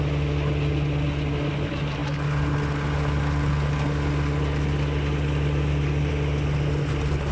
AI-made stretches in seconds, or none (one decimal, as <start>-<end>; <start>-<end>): none